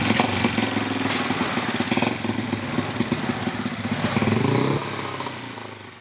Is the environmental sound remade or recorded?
recorded